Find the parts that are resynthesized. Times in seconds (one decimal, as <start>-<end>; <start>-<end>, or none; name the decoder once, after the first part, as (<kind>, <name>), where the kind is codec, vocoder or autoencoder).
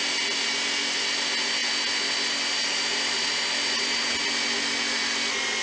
none